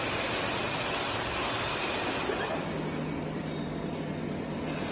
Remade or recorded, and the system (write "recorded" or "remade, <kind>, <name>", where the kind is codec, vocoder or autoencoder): recorded